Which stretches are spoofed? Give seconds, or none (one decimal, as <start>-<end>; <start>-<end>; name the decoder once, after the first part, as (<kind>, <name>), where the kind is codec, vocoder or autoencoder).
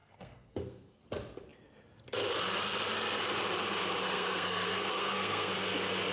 0.0-1.0 (codec, SNAC); 4.0-5.5